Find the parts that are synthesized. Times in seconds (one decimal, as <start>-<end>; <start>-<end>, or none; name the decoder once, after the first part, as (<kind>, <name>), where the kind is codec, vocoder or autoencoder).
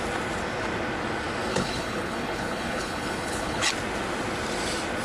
1.5-3.7 (codec, HILCodec)